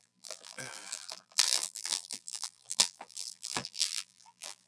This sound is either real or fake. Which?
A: fake